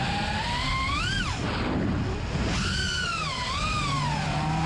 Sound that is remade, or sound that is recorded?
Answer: recorded